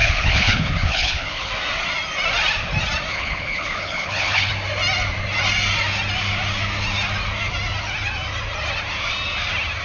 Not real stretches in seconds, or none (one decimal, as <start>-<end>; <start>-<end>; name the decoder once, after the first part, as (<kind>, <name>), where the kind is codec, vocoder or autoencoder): 0.0-1.5 (codec, HILCodec); 3.1-4.5